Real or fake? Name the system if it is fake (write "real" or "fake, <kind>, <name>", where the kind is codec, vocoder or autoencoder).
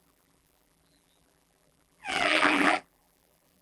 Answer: fake, vocoder, BigVGAN v2